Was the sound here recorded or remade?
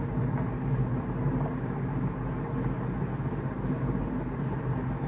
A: recorded